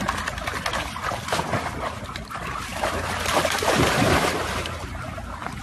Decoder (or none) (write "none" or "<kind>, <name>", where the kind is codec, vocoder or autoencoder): none